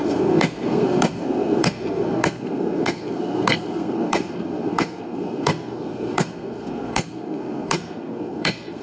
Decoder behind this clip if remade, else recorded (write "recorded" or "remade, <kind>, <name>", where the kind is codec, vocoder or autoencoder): remade, codec, SNAC